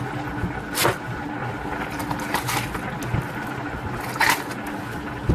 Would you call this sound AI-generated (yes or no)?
no